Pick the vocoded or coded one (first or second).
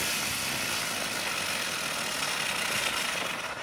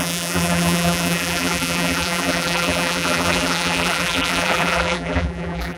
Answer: second